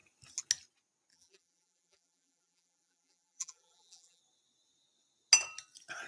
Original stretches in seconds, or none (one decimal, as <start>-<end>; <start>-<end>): 0.0-1.1; 4.2-6.1